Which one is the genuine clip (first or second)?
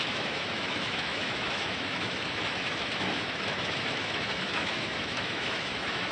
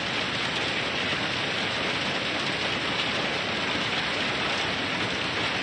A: second